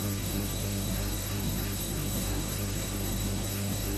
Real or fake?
fake